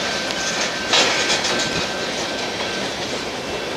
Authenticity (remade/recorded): recorded